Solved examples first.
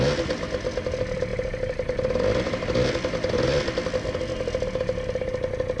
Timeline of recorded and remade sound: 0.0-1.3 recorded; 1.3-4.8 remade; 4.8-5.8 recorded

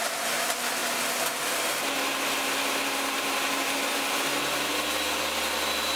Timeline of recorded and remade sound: 0.0-0.8 recorded; 0.8-4.4 remade; 4.4-6.0 recorded

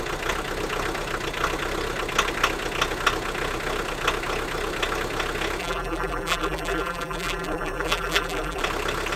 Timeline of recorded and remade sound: 0.0-5.6 recorded; 5.6-8.6 remade; 8.6-9.2 recorded